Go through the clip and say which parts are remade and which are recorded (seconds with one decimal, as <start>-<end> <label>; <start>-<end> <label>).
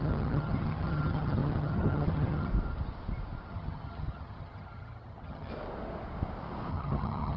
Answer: 0.0-2.5 remade; 2.5-3.5 recorded; 3.5-5.5 remade; 5.5-6.7 recorded; 6.7-7.4 remade